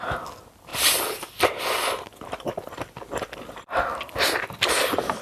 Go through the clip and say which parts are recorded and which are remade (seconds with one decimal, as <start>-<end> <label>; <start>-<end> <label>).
0.0-5.2 recorded